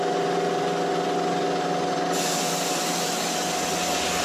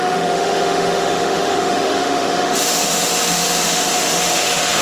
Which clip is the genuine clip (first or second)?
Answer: first